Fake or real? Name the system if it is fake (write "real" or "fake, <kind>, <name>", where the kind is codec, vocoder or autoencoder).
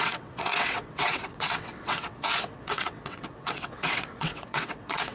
fake, vocoder, WaveNeXt